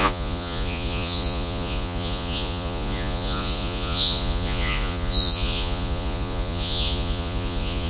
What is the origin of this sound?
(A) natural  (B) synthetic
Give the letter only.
B